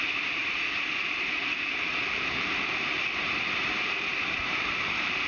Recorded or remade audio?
remade